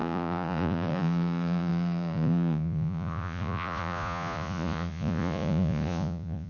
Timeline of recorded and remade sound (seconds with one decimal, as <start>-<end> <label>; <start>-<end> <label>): 0.0-6.5 remade